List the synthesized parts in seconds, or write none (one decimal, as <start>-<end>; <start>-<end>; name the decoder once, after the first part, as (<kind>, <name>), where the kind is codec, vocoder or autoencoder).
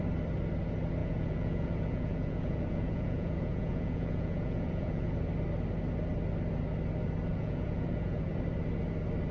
1.0-5.1 (vocoder, Vocos); 7.3-8.3